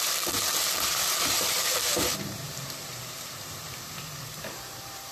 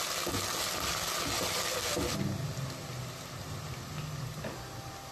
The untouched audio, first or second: second